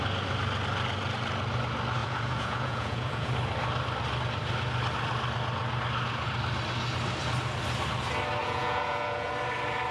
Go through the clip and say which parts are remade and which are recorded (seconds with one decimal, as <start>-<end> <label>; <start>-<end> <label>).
0.0-2.0 recorded; 2.0-3.3 remade; 3.3-8.4 recorded; 8.4-9.3 remade; 9.3-9.9 recorded